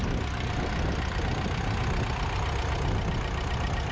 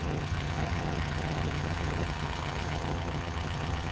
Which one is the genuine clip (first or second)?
first